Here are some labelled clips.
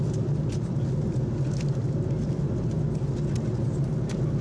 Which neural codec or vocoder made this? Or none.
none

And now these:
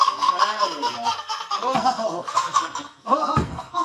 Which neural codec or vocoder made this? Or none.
codec, SNAC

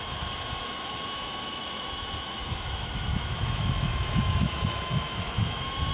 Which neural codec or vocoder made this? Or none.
autoencoder, DAC-VAE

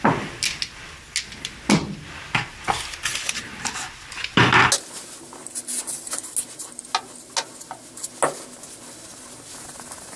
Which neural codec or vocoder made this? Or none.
none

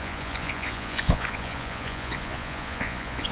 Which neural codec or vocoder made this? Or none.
vocoder, Vocos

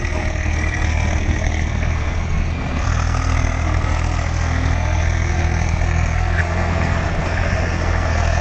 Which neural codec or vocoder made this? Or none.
codec, SNAC